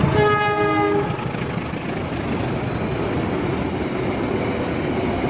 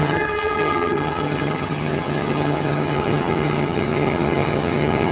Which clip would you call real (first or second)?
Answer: first